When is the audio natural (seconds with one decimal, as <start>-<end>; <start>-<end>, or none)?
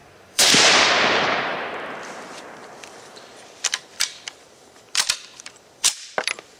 none